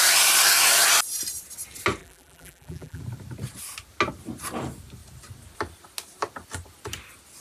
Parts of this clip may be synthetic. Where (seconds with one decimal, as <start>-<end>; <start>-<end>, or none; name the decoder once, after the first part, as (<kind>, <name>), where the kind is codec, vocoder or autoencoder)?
2.0-3.0 (vocoder, BigVGAN v2)